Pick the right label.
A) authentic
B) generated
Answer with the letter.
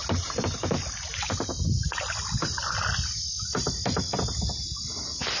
A